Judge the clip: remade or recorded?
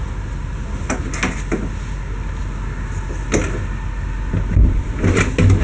recorded